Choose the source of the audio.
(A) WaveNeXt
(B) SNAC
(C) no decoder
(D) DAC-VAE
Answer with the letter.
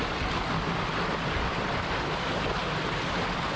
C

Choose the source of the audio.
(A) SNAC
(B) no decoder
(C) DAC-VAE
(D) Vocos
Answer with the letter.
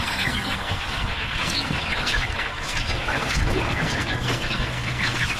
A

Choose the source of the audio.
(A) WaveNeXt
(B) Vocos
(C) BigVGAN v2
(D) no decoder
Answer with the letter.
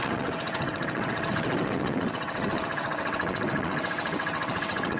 A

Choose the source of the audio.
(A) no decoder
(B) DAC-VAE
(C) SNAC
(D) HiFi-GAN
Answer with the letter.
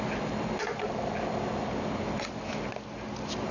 A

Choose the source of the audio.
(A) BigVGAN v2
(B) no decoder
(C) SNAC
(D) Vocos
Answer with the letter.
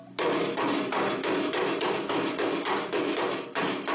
B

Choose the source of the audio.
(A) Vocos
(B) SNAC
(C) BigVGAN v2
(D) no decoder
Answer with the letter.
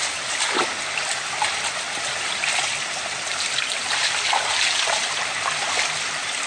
D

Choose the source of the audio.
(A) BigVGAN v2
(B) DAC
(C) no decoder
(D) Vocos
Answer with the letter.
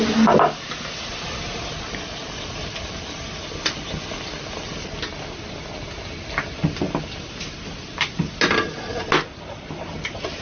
C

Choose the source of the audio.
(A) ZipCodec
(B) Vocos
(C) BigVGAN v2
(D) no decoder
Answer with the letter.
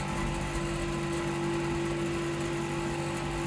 D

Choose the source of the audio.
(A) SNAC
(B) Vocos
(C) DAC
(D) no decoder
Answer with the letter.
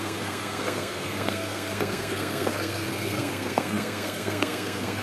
A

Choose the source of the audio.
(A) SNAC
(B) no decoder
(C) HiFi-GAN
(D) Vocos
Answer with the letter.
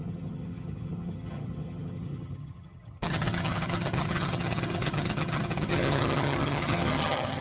C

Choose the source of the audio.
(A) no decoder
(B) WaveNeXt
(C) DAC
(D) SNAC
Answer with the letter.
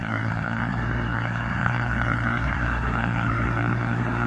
D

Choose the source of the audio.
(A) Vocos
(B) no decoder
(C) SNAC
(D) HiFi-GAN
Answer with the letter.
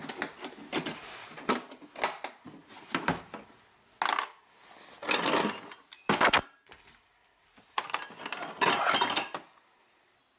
B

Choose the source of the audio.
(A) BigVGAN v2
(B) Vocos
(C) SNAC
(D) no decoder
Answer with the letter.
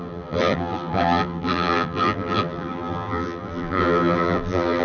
A